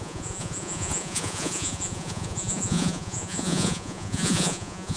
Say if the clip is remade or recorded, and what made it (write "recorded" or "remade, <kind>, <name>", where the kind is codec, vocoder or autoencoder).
remade, vocoder, Vocos